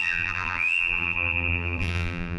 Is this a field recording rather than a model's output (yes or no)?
no